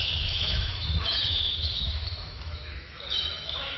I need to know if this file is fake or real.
fake